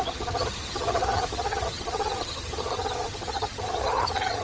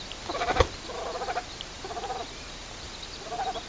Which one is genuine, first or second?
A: second